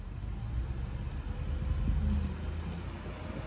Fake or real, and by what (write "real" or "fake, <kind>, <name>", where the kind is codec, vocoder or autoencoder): real